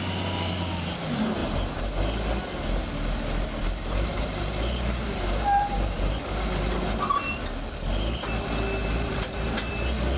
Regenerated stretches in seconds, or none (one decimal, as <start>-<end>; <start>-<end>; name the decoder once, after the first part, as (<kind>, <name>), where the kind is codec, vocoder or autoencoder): 1.4-1.9 (vocoder, BigVGAN v2); 3.6-6.2; 8.8-9.7